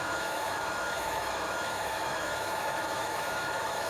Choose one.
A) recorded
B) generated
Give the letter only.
B